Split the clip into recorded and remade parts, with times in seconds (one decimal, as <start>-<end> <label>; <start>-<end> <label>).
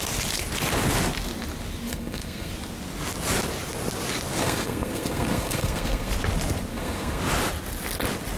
0.0-1.9 recorded; 1.9-2.5 remade; 2.5-4.4 recorded; 4.4-6.1 remade; 6.1-6.7 recorded; 6.7-7.2 remade; 7.2-8.4 recorded